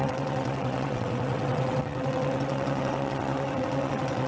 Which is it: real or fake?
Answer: fake